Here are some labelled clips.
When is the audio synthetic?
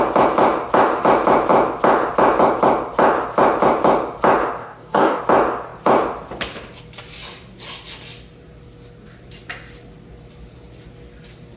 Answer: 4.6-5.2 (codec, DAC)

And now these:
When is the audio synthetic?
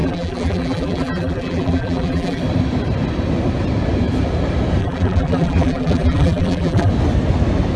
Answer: 0.0-2.4 (vocoder, BigVGAN v2); 4.8-6.9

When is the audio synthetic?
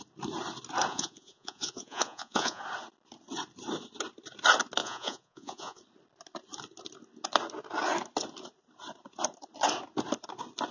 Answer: 0.9-2.6 (vocoder, Vocos); 4.8-5.8